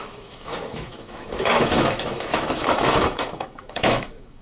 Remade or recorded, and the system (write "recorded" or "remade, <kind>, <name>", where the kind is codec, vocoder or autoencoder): remade, autoencoder, DAC-VAE